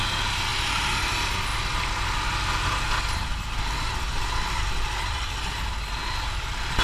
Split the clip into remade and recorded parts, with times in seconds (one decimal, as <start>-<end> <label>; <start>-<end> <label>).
0.0-6.8 recorded